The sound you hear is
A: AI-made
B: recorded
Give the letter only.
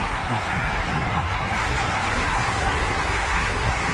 A